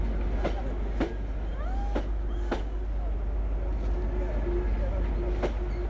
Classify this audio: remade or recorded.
recorded